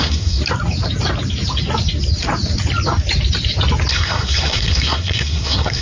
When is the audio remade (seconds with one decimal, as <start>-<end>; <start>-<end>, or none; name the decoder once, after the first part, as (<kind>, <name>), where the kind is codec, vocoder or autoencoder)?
0.0-0.4 (codec, SNAC); 3.9-5.8